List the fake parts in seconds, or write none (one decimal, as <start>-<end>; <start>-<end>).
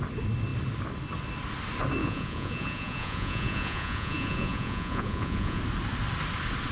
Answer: 2.0-5.6